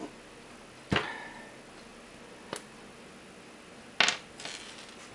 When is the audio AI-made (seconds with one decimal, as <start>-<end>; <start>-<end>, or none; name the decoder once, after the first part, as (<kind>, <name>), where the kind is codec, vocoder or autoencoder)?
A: none